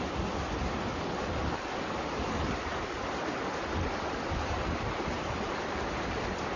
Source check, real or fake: real